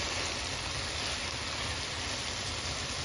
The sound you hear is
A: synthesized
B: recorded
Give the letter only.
B